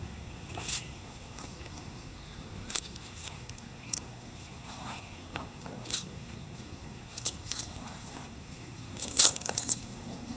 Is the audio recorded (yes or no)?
no